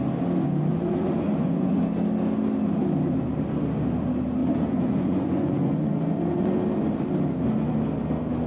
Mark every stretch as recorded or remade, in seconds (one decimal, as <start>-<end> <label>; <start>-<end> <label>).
0.0-0.7 recorded; 0.7-1.8 remade; 1.8-4.4 recorded; 4.4-6.5 remade; 6.5-8.5 recorded